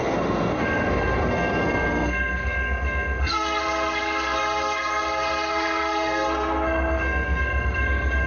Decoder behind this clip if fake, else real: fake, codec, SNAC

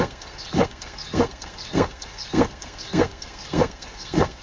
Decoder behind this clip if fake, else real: fake, codec, SNAC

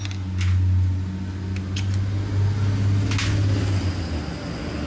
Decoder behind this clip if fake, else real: real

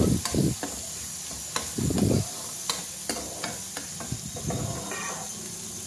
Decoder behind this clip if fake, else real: real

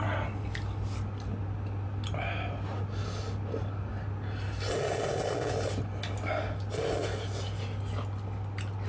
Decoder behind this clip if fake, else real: real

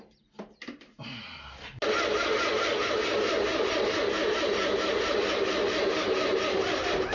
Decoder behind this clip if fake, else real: real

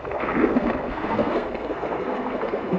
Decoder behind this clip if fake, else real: fake, codec, SNAC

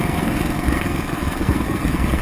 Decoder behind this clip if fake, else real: fake, codec, SNAC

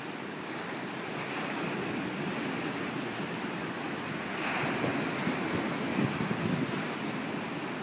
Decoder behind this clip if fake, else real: real